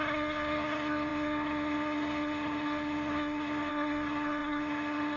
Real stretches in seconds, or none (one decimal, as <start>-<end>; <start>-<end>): none